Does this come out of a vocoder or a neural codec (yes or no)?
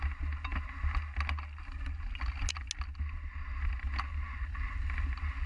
no